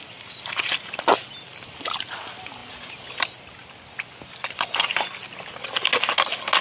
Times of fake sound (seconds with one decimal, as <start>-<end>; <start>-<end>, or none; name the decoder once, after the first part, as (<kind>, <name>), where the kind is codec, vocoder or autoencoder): none